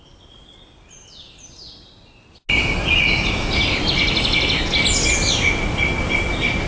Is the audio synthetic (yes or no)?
no